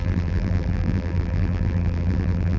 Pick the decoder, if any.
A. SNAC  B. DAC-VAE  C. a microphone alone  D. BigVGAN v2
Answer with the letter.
D